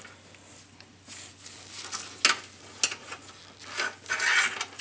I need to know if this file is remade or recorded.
recorded